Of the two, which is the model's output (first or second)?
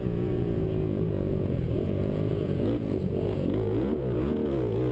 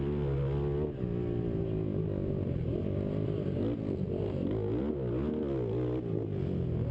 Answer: first